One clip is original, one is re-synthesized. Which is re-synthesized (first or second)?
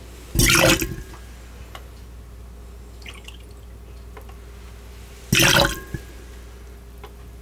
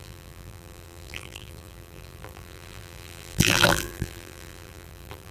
second